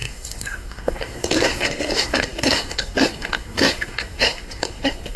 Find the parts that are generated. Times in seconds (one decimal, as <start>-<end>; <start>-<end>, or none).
0.0-5.2